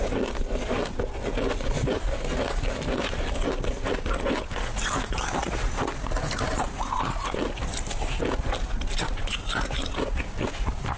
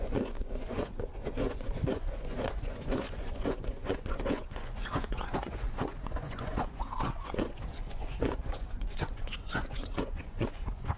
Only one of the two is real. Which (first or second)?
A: first